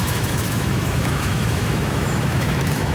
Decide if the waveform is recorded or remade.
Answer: remade